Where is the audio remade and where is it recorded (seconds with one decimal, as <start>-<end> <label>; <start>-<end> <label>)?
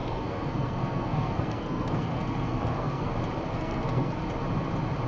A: 0.0-3.1 remade; 3.1-3.5 recorded; 3.5-4.2 remade; 4.2-5.1 recorded